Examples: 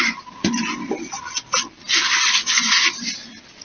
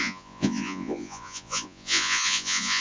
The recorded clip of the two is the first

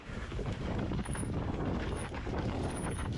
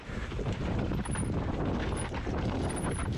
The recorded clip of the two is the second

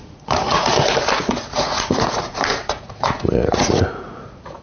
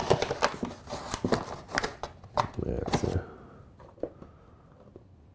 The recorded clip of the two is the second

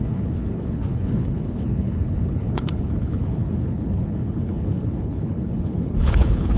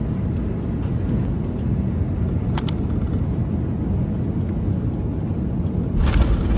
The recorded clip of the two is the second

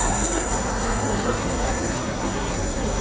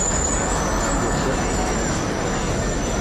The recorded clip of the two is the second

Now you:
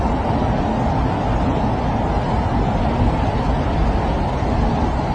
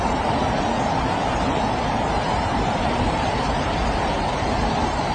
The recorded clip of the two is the first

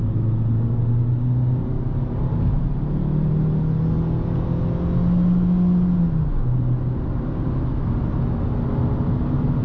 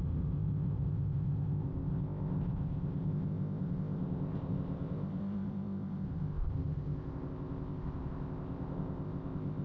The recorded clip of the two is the first